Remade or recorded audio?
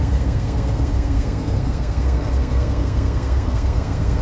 remade